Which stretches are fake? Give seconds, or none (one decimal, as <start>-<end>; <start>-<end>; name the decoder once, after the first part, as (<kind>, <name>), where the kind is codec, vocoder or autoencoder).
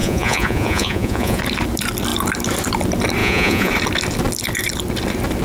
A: 0.0-1.4 (vocoder, Vocos); 3.2-3.7